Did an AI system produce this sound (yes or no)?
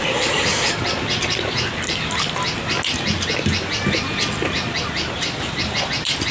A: no